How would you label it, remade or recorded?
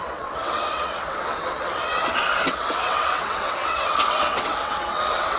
remade